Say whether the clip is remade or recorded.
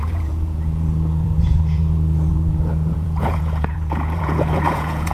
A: remade